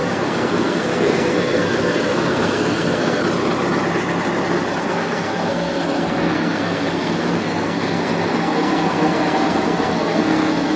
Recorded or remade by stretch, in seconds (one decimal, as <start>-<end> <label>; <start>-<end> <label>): 0.0-3.2 remade; 3.2-4.8 recorded; 4.8-10.8 remade